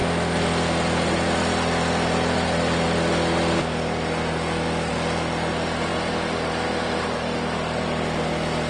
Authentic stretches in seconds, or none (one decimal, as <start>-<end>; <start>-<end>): 0.0-8.7